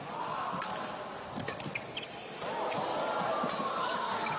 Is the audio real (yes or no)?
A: yes